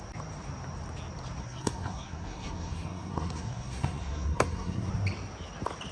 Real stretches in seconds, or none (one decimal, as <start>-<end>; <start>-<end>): 0.0-1.4; 4.9-5.9